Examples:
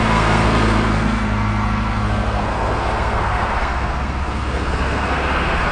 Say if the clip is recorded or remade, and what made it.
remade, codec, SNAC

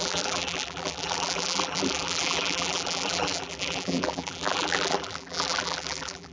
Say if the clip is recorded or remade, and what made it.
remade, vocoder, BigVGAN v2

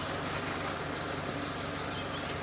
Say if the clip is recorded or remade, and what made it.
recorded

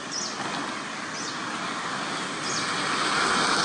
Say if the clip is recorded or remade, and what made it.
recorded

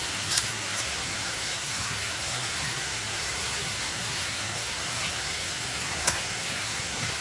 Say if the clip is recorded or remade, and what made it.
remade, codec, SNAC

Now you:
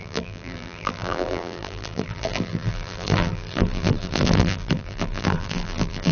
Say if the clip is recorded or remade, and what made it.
remade, vocoder, BigVGAN v2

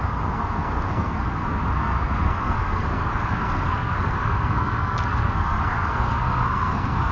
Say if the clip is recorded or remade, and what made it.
remade, codec, SNAC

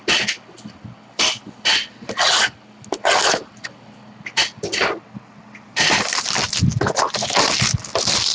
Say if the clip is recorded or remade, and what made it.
recorded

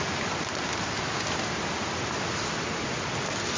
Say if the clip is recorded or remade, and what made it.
recorded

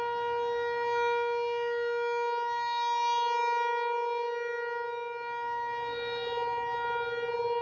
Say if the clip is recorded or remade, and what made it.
recorded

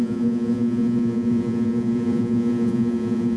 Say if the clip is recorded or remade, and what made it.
remade, vocoder, Vocos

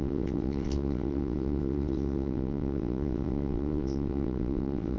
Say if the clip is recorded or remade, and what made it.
remade, vocoder, WaveNeXt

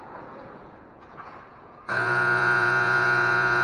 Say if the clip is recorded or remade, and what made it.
remade, vocoder, Vocos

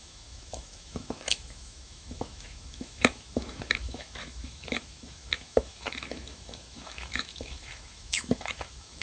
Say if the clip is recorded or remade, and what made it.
remade, autoencoder, DAC-VAE